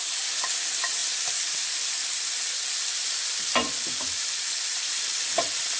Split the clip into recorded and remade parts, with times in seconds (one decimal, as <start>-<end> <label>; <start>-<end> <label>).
0.0-4.7 recorded; 4.7-5.3 remade; 5.3-5.8 recorded